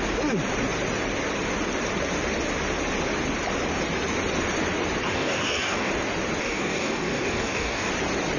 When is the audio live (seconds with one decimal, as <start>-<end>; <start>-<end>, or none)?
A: 0.0-5.1; 5.9-6.4; 7.9-8.4